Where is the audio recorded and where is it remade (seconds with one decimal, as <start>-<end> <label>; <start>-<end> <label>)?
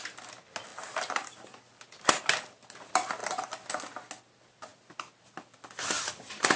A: 0.0-0.7 recorded; 0.7-2.2 remade; 2.2-3.2 recorded; 3.2-3.7 remade; 3.7-6.6 recorded